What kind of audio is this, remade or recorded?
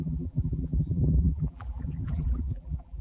remade